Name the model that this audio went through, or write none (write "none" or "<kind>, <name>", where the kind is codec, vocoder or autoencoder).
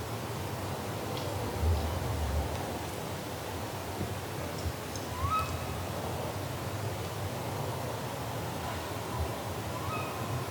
none